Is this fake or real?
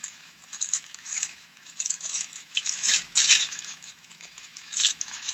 fake